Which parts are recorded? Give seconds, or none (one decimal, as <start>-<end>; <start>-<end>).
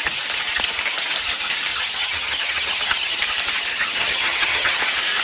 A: 0.0-1.7; 3.2-3.7; 4.8-5.2